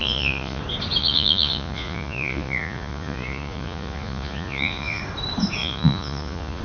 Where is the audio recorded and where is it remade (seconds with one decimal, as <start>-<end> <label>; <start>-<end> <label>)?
0.0-0.6 remade; 0.6-1.0 recorded; 1.0-5.0 remade; 5.0-5.6 recorded; 5.6-6.6 remade